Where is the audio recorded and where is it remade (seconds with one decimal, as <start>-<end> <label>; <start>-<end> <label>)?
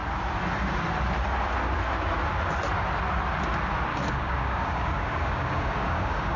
0.0-3.9 recorded; 3.9-6.4 remade